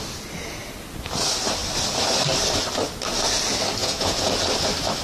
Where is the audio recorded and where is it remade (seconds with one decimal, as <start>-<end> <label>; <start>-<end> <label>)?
0.0-3.8 recorded; 3.8-4.4 remade; 4.4-5.0 recorded